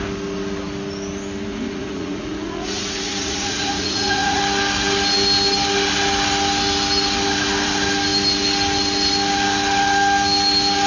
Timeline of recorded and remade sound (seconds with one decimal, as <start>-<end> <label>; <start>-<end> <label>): 0.0-1.5 recorded; 1.5-4.4 remade; 4.4-10.9 recorded